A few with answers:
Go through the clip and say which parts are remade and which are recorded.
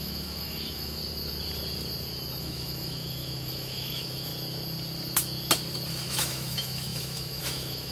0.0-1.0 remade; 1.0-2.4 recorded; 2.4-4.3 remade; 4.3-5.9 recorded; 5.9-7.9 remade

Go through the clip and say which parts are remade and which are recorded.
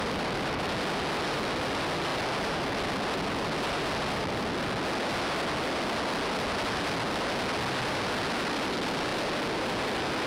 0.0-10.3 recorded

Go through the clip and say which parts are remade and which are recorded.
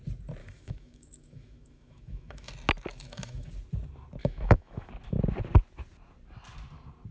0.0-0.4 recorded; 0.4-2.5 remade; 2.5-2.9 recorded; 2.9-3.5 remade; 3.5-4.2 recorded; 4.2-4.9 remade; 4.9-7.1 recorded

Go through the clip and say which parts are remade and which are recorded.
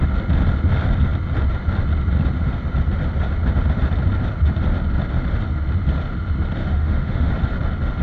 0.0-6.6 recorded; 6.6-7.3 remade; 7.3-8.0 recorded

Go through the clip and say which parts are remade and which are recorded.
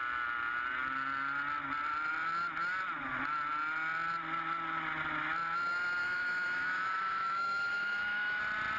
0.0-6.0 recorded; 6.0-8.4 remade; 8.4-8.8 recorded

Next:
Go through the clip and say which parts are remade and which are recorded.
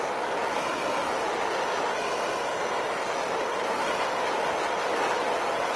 0.0-5.8 recorded